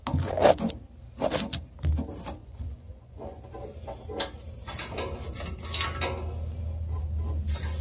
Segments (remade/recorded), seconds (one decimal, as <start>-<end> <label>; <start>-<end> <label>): 0.0-2.4 recorded; 2.4-3.4 remade; 3.4-7.8 recorded